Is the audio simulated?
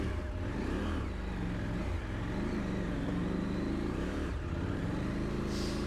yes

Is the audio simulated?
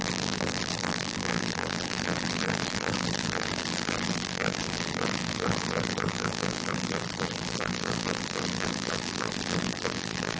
yes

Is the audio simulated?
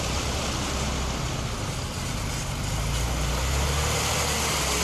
no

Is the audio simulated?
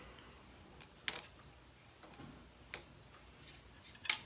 no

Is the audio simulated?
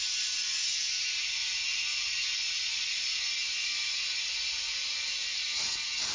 no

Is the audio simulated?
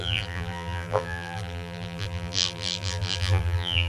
yes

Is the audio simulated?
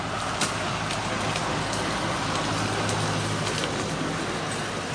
no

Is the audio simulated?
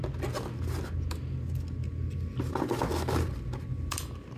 no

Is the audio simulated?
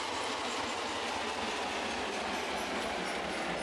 no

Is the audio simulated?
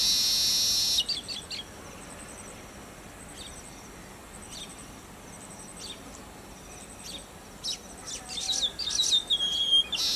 no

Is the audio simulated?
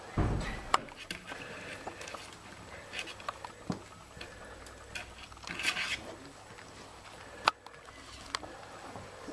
no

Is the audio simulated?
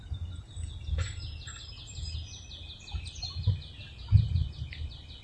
no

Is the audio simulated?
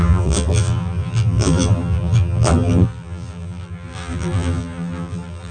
yes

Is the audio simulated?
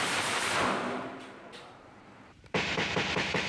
yes